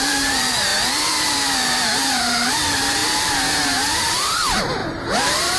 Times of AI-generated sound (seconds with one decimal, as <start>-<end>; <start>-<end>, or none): 0.0-5.6